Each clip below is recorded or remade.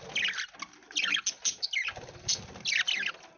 recorded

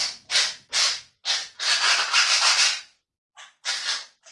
recorded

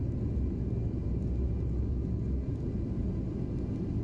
recorded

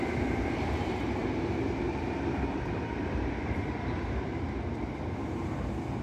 remade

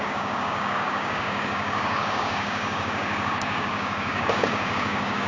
remade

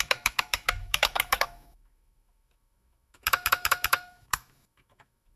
remade